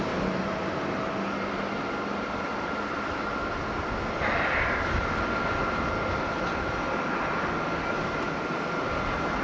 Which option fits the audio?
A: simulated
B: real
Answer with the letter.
B